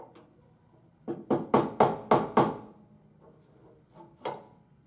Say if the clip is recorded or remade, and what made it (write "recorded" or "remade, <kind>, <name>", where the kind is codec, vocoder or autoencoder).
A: recorded